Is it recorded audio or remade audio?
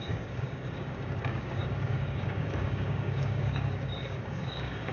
remade